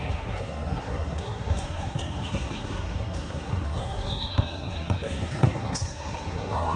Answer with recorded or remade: remade